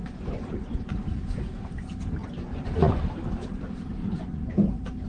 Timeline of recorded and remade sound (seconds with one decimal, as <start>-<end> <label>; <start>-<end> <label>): 0.0-1.1 remade; 1.1-2.2 recorded; 2.2-3.0 remade; 3.0-4.0 recorded; 4.0-4.5 remade; 4.5-5.1 recorded